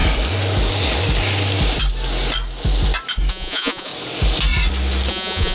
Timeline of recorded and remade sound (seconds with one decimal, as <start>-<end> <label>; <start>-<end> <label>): 0.0-3.3 recorded; 3.3-3.9 remade; 3.9-5.1 recorded; 5.1-5.5 remade